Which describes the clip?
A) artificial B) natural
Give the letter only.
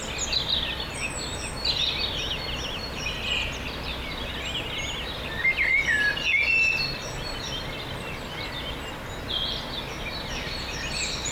B